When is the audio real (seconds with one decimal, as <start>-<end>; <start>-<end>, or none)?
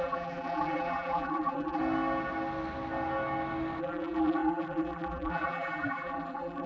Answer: 1.8-3.8